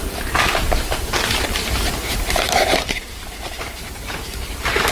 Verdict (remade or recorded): remade